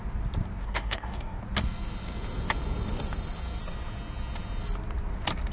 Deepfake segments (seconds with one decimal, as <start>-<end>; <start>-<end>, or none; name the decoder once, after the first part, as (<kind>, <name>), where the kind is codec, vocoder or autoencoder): 0.6-1.4 (codec, DAC)